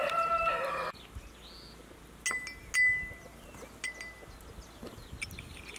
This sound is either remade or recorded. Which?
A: recorded